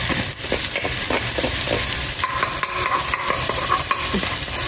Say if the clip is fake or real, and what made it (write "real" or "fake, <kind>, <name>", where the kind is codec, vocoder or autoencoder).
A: fake, vocoder, BigVGAN v2